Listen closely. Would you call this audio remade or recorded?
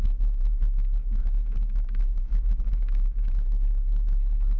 remade